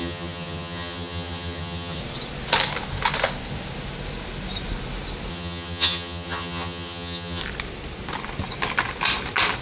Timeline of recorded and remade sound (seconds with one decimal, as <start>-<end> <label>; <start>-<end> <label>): 0.0-2.0 remade; 2.0-5.3 recorded; 5.3-7.4 remade; 7.4-9.6 recorded